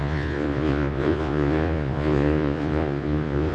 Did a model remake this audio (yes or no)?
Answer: yes